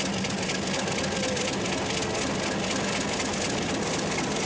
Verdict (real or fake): real